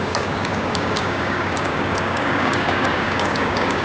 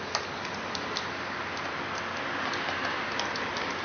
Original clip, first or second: second